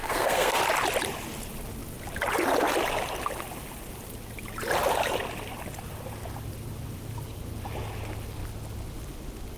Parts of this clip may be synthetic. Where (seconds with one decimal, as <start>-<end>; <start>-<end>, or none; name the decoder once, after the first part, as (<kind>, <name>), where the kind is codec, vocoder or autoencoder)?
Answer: 0.0-0.6 (codec, SNAC)